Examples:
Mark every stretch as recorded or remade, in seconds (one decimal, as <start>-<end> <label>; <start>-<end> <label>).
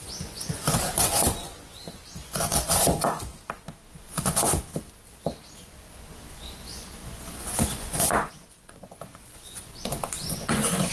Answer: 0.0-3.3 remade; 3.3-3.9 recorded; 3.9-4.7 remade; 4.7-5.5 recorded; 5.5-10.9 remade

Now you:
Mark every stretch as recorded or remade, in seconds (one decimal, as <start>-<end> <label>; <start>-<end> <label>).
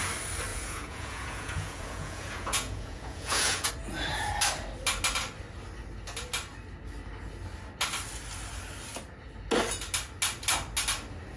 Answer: 0.0-0.5 recorded; 0.5-3.7 remade; 3.7-11.4 recorded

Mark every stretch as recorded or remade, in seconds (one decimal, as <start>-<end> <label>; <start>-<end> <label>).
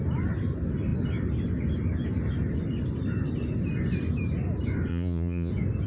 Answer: 0.0-4.9 recorded; 4.9-5.5 remade; 5.5-5.9 recorded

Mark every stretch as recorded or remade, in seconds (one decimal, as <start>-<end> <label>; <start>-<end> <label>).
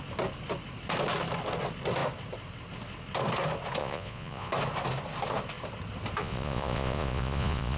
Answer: 0.0-3.8 recorded; 3.8-4.5 remade; 4.5-6.2 recorded; 6.2-7.8 remade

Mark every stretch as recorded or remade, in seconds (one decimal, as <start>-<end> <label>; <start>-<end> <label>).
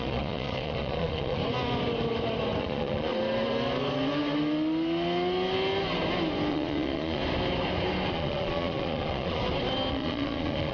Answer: 0.0-1.4 remade; 1.4-2.6 recorded; 2.6-3.1 remade; 3.1-6.5 recorded; 6.5-7.2 remade; 7.2-8.1 recorded; 8.1-9.4 remade; 9.4-9.9 recorded; 9.9-10.7 remade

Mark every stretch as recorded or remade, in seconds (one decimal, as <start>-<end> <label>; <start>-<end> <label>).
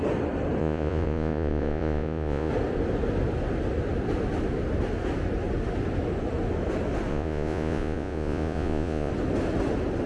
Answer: 0.0-0.6 recorded; 0.6-2.5 remade; 2.5-7.1 recorded; 7.1-9.1 remade; 9.1-10.1 recorded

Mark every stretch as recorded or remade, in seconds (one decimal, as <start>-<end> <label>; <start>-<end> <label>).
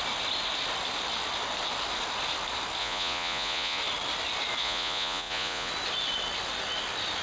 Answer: 0.0-2.8 recorded; 2.8-3.8 remade; 3.8-4.6 recorded; 4.6-5.7 remade; 5.7-7.2 recorded